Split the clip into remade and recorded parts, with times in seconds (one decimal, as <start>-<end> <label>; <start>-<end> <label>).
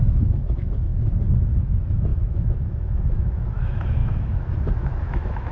0.0-0.9 remade; 0.9-1.6 recorded; 1.6-5.5 remade